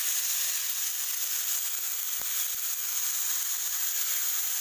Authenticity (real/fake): real